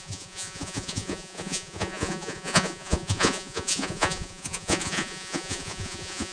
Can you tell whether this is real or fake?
fake